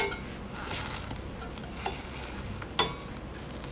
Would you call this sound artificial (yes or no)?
no